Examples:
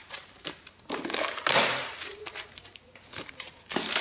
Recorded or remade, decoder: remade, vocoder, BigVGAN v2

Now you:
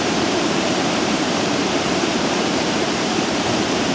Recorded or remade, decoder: remade, vocoder, BigVGAN v2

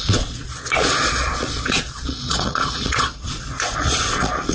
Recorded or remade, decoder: remade, vocoder, Vocos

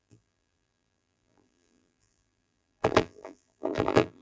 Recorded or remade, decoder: remade, vocoder, BigVGAN v2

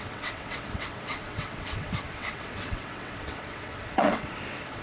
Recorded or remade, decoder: remade, vocoder, WaveNeXt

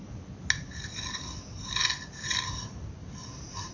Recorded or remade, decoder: recorded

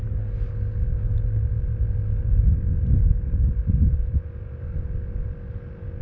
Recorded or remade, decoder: recorded